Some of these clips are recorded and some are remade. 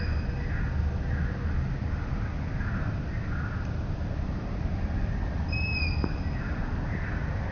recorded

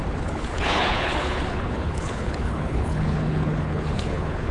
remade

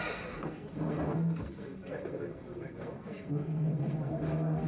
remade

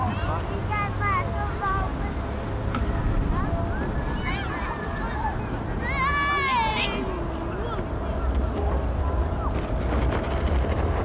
recorded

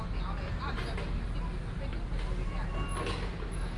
recorded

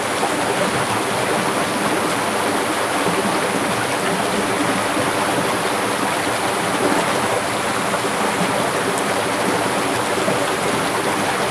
recorded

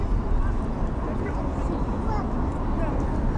recorded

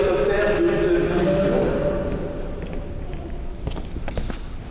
recorded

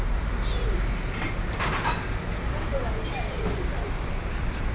remade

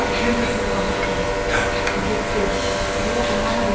recorded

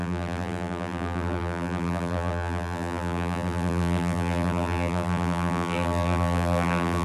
remade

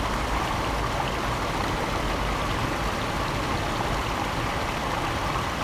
recorded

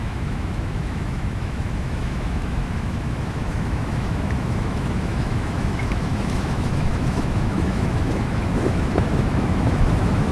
remade